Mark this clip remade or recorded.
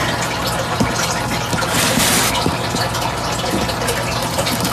recorded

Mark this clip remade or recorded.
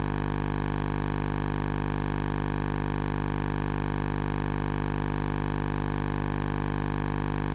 recorded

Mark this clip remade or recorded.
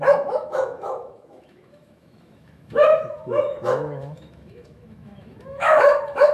remade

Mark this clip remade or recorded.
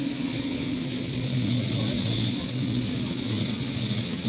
remade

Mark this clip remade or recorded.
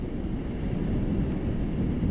recorded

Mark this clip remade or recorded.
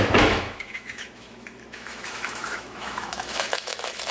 remade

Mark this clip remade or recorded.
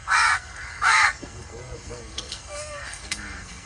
remade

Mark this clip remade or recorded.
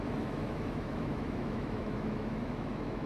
remade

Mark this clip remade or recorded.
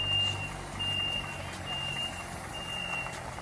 recorded